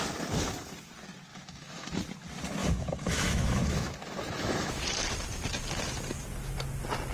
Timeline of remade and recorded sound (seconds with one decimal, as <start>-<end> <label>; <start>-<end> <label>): 0.0-1.3 recorded; 1.3-2.0 remade; 2.0-2.6 recorded; 2.6-4.9 remade; 4.9-7.1 recorded